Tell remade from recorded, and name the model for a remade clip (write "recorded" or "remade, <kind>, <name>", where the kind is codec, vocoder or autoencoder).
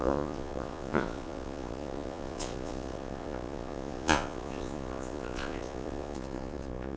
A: remade, vocoder, Vocos